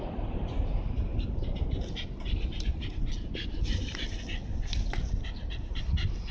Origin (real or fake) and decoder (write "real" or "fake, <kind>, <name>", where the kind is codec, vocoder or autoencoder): real